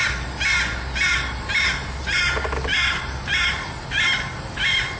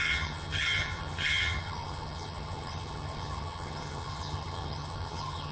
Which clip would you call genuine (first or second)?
first